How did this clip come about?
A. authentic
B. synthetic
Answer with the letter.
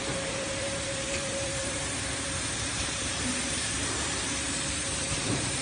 B